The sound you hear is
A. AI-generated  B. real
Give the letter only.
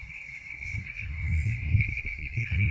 A